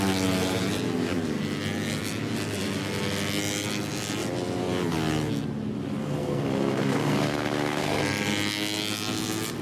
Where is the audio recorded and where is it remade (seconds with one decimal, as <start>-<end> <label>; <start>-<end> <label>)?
0.0-6.0 recorded; 6.0-8.0 remade; 8.0-9.6 recorded